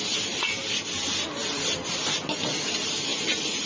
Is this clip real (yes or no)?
yes